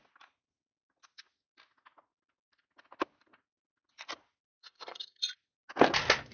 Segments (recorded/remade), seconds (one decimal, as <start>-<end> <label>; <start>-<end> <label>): 0.0-4.5 recorded; 4.5-5.2 remade; 5.2-6.3 recorded